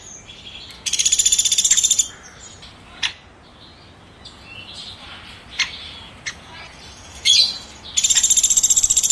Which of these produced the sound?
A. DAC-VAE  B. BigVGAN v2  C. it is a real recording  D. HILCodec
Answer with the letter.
C